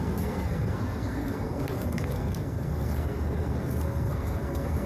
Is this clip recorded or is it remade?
remade